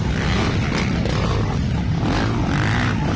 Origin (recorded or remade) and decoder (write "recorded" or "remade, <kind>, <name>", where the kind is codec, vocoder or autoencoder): recorded